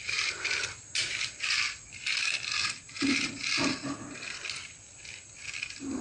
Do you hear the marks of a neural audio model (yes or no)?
yes